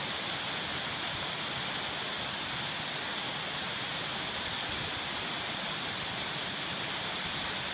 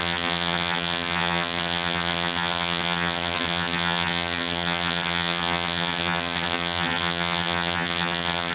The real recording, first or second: first